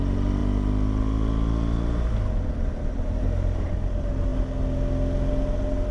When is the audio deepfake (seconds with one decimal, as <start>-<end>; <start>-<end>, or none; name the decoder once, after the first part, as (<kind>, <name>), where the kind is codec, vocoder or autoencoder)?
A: none